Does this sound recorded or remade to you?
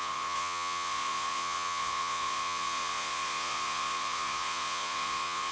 remade